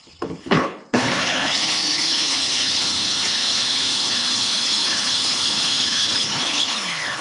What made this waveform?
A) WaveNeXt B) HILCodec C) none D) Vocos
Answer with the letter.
B